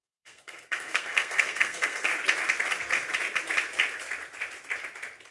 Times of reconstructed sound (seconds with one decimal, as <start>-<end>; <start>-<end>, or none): 0.0-2.1